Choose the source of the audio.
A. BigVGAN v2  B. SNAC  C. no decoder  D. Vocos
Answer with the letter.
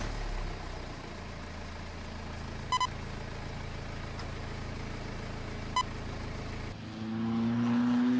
C